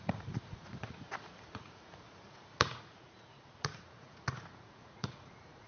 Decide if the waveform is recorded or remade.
remade